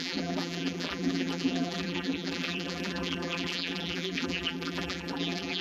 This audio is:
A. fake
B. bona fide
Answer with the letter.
A